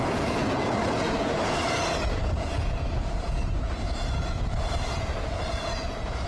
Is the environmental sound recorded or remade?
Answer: remade